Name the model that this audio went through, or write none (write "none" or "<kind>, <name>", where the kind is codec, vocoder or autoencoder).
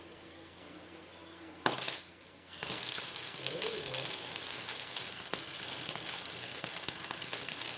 codec, SNAC